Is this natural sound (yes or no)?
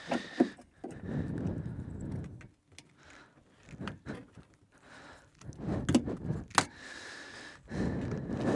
yes